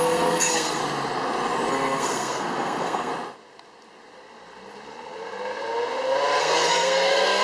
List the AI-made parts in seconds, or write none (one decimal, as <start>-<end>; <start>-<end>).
0.0-0.8; 1.7-3.1; 6.4-7.4